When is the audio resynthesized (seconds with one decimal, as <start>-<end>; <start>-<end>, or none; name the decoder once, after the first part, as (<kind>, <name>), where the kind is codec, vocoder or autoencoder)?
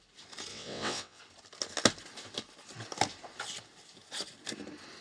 0.5-1.2 (vocoder, WaveNeXt)